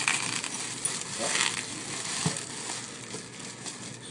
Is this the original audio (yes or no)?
yes